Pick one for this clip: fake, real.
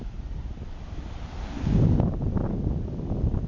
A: real